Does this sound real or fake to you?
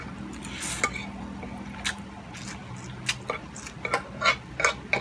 real